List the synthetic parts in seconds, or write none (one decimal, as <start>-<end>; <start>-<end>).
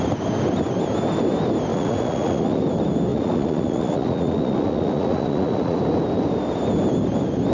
1.7-2.6; 3.1-5.8